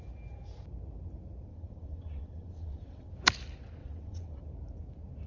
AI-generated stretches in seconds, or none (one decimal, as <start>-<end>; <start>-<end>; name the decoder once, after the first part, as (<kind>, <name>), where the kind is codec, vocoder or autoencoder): 1.5-3.1 (vocoder, WaveNeXt); 3.8-4.4